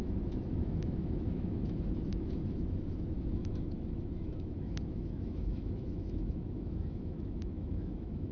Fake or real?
fake